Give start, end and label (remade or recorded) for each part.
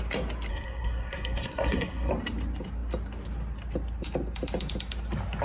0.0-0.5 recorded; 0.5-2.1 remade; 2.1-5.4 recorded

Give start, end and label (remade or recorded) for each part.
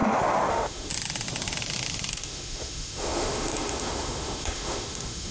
0.0-0.5 recorded; 0.5-0.9 remade; 0.9-2.1 recorded; 2.1-5.3 remade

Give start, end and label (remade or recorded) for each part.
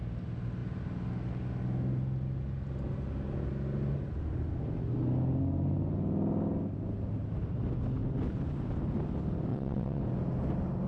0.0-9.5 recorded; 9.5-10.0 remade; 10.0-10.9 recorded